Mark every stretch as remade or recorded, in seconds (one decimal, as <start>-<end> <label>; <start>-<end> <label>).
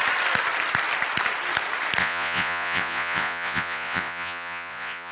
0.0-2.0 recorded; 2.0-5.1 remade